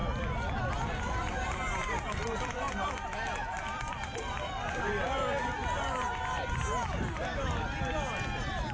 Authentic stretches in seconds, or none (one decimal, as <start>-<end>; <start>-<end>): 0.7-1.2; 6.2-8.7